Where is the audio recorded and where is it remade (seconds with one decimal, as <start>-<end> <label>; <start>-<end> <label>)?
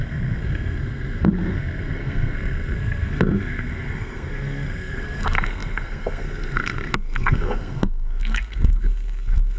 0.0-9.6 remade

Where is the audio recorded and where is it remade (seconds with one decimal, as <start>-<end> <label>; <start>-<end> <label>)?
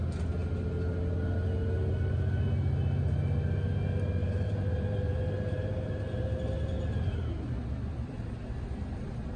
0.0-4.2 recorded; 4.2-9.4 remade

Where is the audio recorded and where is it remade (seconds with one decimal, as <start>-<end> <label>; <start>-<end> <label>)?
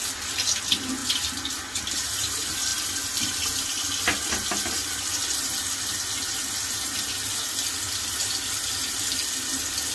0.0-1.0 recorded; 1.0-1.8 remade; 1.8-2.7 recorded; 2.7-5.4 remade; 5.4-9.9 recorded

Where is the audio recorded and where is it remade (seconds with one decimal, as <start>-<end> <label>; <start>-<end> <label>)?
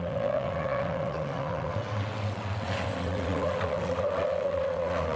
0.0-5.2 remade